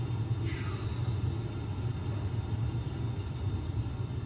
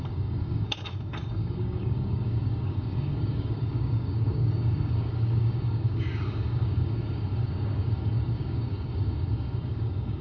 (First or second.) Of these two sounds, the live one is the first